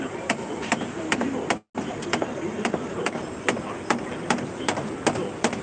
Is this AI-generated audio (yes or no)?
no